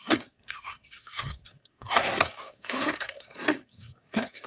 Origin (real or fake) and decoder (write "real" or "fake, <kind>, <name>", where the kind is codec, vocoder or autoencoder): fake, codec, SNAC